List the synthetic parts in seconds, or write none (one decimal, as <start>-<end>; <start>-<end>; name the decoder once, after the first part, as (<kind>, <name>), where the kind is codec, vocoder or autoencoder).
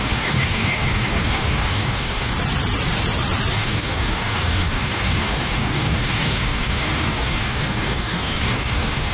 0.0-2.3 (codec, DAC); 3.5-9.1